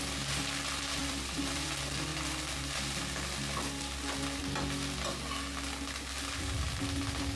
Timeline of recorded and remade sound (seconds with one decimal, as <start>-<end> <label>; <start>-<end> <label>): 0.0-1.0 recorded; 1.0-1.7 remade; 1.7-7.4 recorded